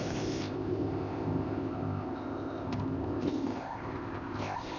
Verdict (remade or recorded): remade